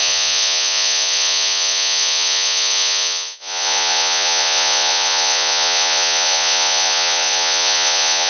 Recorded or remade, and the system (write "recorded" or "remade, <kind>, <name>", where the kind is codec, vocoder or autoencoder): remade, vocoder, Vocos